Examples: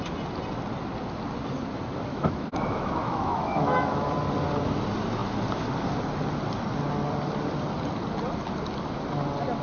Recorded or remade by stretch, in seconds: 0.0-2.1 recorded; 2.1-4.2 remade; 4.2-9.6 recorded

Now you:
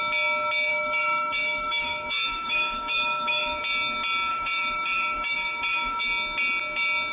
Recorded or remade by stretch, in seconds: 0.0-0.7 recorded; 0.7-3.6 remade; 3.6-4.3 recorded; 4.3-6.0 remade; 6.0-7.1 recorded